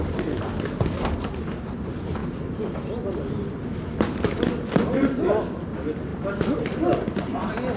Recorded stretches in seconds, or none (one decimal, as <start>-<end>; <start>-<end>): 0.0-7.8